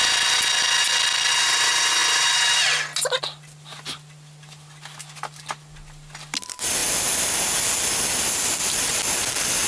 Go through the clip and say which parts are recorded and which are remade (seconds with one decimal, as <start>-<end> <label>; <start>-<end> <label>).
0.0-9.7 recorded